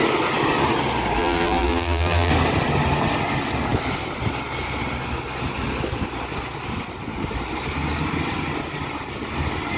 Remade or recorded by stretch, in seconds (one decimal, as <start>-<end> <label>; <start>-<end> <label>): 0.0-1.2 recorded; 1.2-2.3 remade; 2.3-9.8 recorded